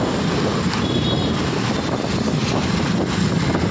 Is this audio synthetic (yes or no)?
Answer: no